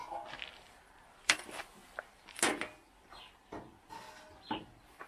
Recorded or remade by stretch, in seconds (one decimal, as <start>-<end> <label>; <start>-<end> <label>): 0.0-5.1 recorded